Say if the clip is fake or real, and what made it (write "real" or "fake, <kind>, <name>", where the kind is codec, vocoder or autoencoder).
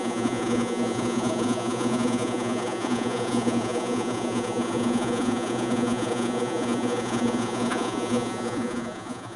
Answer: fake, vocoder, Vocos